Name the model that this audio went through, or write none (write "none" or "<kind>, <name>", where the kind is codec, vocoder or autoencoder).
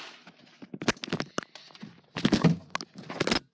none